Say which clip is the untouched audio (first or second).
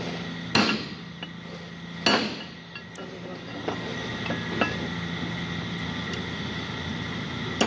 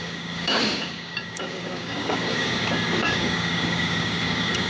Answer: first